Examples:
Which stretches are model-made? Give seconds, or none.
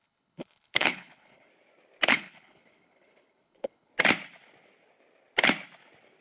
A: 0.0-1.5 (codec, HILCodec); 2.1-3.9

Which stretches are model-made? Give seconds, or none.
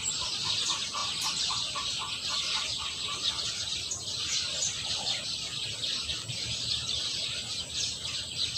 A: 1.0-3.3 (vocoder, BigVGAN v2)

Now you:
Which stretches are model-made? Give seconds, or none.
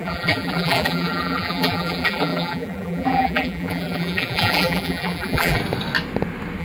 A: 0.0-5.6 (vocoder, BigVGAN v2)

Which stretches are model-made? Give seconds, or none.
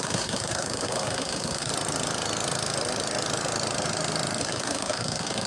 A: 0.0-1.7 (codec, SNAC); 4.4-5.5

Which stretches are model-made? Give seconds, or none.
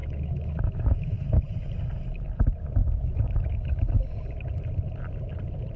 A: 0.0-1.3 (autoencoder, DAC-VAE); 2.8-3.9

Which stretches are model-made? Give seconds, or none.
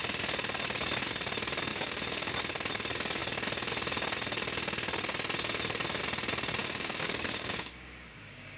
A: 1.7-2.3 (codec, DAC); 6.6-8.6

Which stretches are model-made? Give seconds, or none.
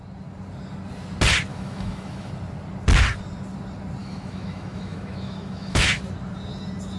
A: 1.5-2.3 (autoencoder, DAC-VAE); 4.0-6.0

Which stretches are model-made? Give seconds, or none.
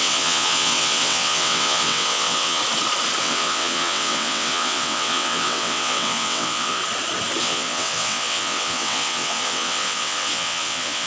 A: 0.0-2.6 (vocoder, WaveNeXt); 3.2-6.8; 7.4-11.1